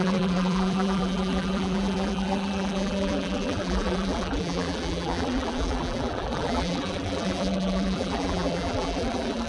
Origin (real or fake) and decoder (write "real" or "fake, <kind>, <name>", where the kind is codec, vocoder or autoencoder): fake, vocoder, BigVGAN v2